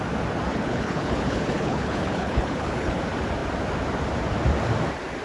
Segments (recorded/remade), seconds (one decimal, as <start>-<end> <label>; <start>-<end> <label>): 0.0-0.5 recorded; 0.5-3.0 remade; 3.0-5.2 recorded